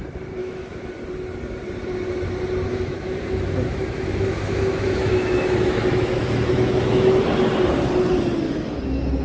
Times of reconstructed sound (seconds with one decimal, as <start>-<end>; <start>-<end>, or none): 0.4-0.9; 2.7-7.2